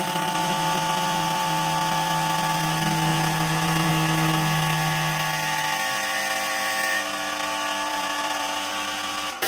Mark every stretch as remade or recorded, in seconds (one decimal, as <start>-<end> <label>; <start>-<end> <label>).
0.0-3.1 recorded; 3.1-3.9 remade; 3.9-7.9 recorded; 7.9-8.7 remade; 8.7-9.5 recorded